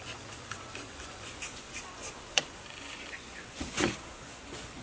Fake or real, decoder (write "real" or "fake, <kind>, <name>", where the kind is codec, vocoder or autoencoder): fake, vocoder, Vocos